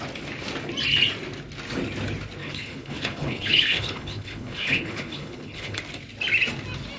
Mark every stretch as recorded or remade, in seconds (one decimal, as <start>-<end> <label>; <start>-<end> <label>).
0.0-2.4 recorded; 2.4-5.8 remade; 5.8-7.0 recorded